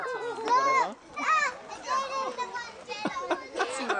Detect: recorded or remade recorded